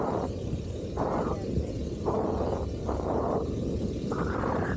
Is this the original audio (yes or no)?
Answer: yes